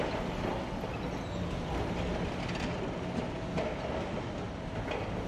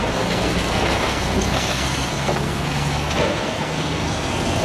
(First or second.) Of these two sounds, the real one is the first